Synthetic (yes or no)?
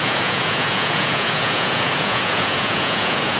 yes